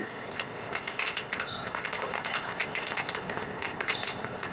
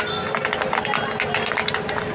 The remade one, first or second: first